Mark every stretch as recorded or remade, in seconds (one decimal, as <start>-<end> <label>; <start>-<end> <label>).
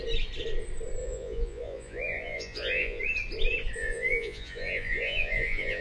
0.0-1.0 recorded; 1.0-3.0 remade; 3.0-3.8 recorded; 3.8-5.8 remade